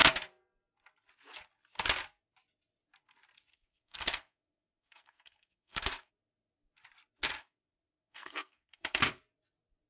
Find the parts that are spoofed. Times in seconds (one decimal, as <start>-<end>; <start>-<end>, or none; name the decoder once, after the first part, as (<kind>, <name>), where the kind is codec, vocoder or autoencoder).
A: 3.5-6.1 (codec, SNAC); 7.4-9.0